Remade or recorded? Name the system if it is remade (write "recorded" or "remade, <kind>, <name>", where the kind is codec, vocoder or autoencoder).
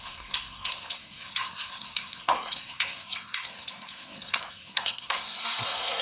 remade, codec, SNAC